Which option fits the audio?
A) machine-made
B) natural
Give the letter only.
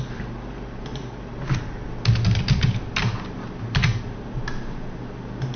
B